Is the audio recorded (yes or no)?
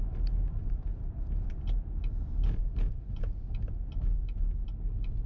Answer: yes